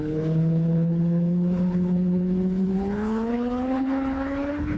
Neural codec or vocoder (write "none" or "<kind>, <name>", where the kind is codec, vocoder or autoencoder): codec, HILCodec